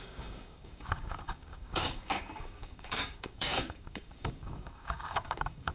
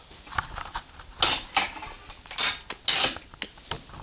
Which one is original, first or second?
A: second